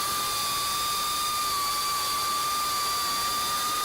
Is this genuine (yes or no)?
yes